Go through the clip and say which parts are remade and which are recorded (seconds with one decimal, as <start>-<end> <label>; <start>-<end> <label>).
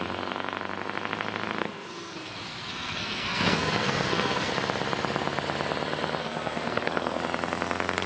0.0-1.6 recorded; 1.6-4.5 remade; 4.5-6.2 recorded; 6.2-7.2 remade; 7.2-8.1 recorded